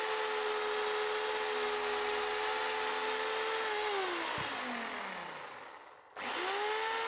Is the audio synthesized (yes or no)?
no